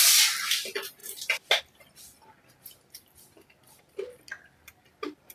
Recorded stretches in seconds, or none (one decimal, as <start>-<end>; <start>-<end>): 0.0-5.3